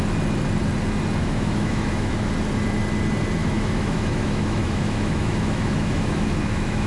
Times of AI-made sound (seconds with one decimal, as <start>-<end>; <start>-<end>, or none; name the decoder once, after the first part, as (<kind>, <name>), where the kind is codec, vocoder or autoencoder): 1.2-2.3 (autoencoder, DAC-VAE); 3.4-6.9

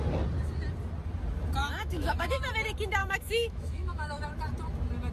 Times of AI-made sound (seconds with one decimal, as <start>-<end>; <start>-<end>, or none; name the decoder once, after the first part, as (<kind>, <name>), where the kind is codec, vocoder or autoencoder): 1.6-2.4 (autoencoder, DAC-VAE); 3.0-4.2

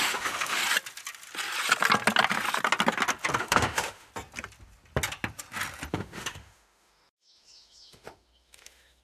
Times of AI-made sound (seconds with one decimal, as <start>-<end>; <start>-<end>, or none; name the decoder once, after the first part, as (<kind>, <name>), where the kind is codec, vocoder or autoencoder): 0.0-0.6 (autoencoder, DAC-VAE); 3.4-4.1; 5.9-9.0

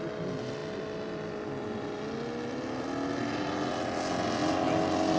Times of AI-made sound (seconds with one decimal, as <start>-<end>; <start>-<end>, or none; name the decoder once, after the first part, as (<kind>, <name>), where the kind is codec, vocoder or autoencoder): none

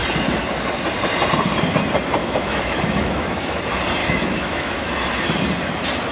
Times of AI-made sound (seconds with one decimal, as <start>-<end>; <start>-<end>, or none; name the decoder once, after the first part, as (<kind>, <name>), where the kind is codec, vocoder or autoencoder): 2.2-3.6 (autoencoder, DAC-VAE); 4.0-4.9